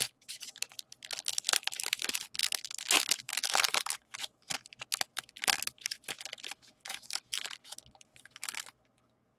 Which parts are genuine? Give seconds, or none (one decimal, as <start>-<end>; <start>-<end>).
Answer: 0.7-1.3